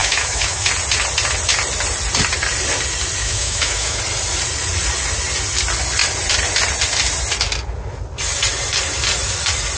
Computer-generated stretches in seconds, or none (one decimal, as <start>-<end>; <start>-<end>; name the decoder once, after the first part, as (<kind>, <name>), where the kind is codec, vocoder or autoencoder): 0.0-0.7 (autoencoder, DAC-VAE); 3.2-4.0